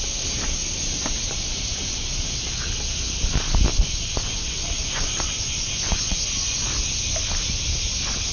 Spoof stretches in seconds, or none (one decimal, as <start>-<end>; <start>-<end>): 1.2-2.2; 3.7-6.6